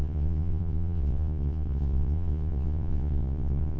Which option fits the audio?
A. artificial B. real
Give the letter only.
A